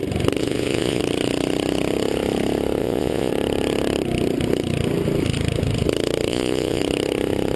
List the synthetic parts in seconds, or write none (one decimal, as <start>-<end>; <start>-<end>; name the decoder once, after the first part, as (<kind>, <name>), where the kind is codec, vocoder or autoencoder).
0.4-1.0 (vocoder, Vocos); 2.8-3.3; 6.3-6.8